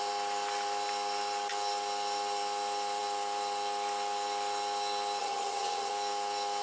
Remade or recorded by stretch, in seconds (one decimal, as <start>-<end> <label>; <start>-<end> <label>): 0.0-5.2 recorded; 5.2-5.9 remade; 5.9-6.6 recorded

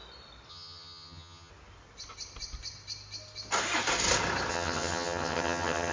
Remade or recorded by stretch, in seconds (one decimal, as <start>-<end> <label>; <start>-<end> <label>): 0.0-0.5 recorded; 0.5-1.5 remade; 1.5-4.5 recorded; 4.5-5.9 remade